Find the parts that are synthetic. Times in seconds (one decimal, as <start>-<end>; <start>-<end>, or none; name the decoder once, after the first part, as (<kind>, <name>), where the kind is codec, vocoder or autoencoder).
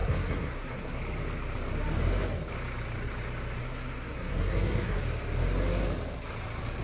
0.0-1.0 (codec, SNAC); 3.6-5.0